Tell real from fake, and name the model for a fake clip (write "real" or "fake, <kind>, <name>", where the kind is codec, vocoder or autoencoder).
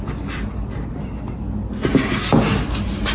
real